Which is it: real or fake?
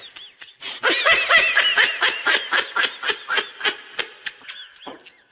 real